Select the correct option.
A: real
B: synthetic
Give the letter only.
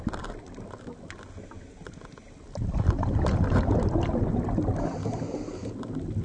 A